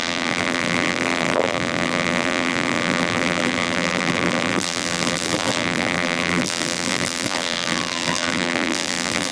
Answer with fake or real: fake